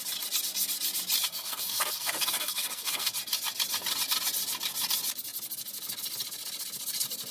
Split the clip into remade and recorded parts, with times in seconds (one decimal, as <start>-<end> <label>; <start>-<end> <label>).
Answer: 0.0-1.3 recorded; 1.3-3.1 remade; 3.1-7.3 recorded